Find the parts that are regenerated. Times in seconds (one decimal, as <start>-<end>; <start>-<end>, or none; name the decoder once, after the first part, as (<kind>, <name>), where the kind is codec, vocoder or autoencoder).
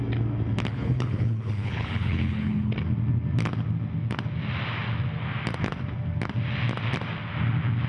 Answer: 0.7-2.7 (codec, HILCodec)